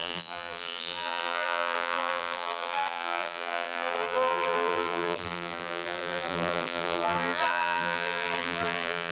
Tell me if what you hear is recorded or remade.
remade